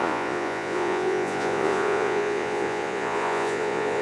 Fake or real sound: fake